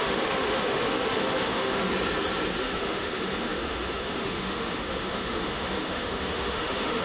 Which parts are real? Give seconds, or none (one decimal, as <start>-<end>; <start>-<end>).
1.9-2.6